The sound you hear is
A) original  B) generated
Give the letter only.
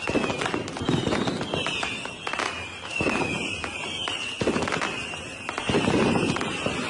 A